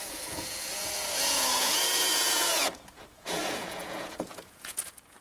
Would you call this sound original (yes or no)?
no